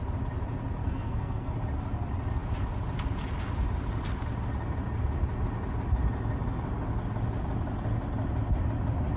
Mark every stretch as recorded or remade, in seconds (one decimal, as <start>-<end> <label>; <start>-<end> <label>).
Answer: 0.0-0.8 recorded; 0.8-1.5 remade; 1.5-9.2 recorded